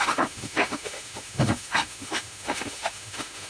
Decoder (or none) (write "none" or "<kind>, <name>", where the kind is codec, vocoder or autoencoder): autoencoder, DAC-VAE